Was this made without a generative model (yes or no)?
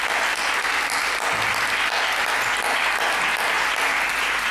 yes